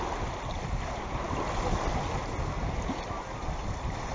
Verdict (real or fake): real